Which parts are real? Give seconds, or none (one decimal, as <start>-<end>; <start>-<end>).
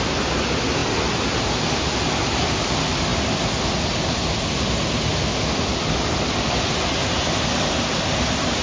0.0-8.6